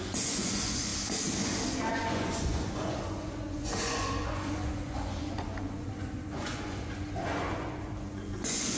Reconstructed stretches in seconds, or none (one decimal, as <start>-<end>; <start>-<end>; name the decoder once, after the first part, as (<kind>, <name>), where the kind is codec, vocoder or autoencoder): 0.0-0.9 (vocoder, Vocos); 1.9-8.8